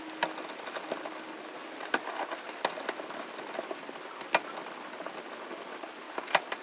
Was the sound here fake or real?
real